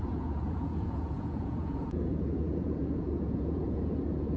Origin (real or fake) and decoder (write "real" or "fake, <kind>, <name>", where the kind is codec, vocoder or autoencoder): fake, vocoder, Vocos